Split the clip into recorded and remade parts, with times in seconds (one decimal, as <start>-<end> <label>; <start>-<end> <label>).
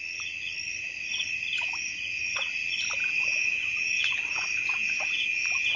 0.0-3.0 recorded; 3.0-5.8 remade